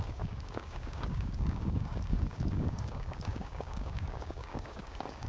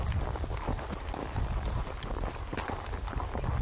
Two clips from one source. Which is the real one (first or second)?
second